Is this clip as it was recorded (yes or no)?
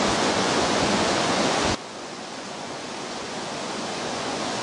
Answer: no